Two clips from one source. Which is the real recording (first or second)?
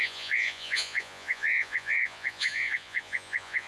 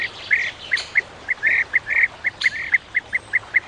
second